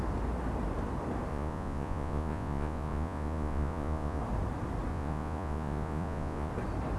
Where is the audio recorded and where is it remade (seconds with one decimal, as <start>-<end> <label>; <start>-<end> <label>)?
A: 0.0-1.3 recorded; 1.3-4.2 remade; 4.2-4.9 recorded; 4.9-6.5 remade; 6.5-7.0 recorded